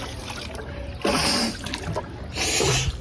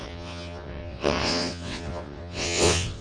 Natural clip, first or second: first